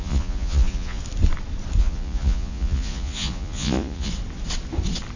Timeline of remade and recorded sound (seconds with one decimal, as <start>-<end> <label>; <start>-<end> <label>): 0.0-1.0 remade; 1.0-1.8 recorded; 1.8-4.1 remade; 4.1-5.2 recorded